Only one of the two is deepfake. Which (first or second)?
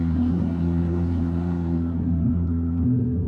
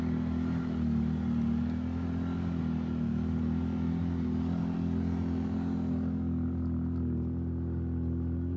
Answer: first